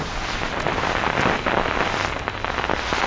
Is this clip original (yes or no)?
yes